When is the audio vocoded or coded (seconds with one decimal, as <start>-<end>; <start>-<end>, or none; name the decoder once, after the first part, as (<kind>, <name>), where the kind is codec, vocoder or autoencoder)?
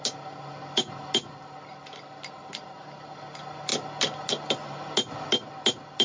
none